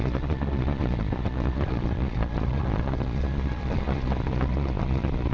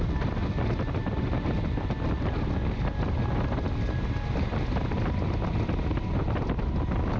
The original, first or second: second